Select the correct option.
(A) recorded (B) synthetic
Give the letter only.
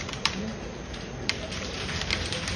B